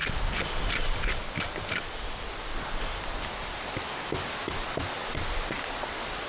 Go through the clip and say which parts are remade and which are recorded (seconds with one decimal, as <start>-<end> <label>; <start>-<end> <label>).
0.0-6.3 recorded